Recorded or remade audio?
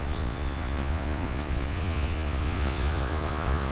remade